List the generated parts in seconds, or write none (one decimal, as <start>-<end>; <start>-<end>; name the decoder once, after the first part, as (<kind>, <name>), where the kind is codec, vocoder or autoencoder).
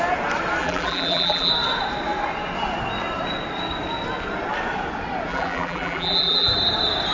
0.6-1.5 (vocoder, BigVGAN v2); 5.3-6.5